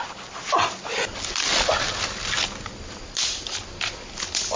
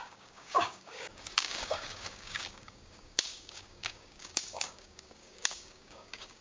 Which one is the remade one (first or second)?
second